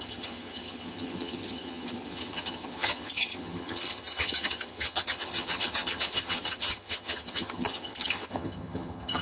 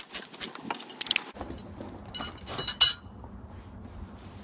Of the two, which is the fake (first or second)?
first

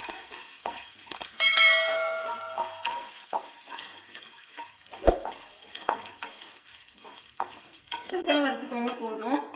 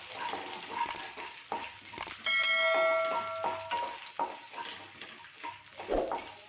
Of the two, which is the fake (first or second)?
first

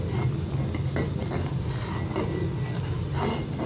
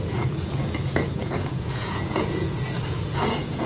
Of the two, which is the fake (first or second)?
second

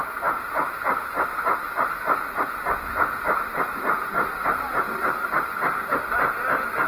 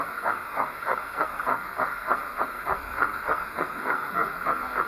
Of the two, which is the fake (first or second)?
second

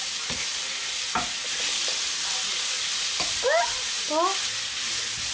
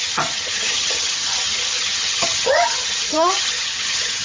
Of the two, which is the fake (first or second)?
second